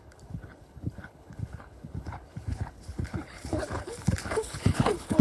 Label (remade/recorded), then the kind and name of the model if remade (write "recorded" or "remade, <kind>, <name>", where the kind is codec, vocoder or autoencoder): remade, codec, HILCodec